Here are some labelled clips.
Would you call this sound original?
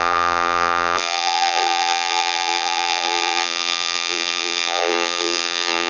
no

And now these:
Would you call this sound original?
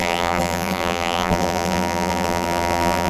no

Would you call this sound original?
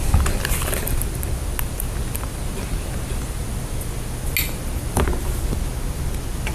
yes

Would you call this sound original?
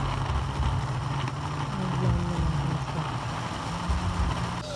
yes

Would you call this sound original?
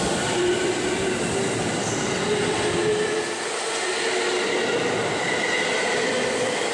yes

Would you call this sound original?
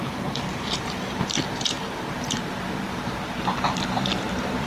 no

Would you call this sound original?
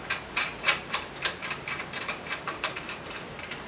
no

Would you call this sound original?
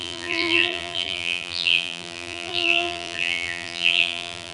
no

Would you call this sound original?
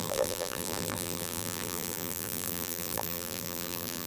no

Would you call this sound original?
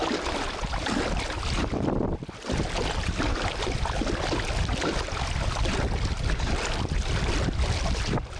yes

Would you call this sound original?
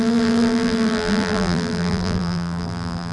no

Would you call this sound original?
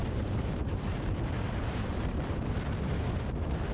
no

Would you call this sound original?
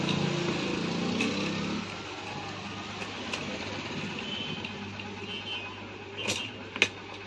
yes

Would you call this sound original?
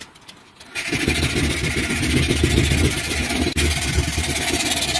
yes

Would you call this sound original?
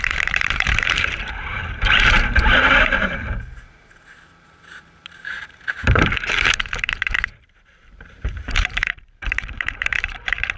no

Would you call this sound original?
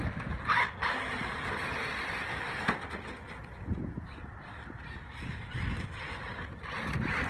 yes